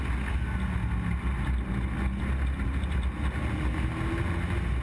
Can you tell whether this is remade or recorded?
recorded